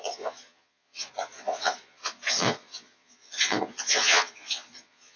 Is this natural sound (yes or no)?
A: no